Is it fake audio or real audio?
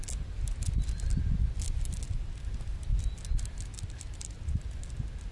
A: real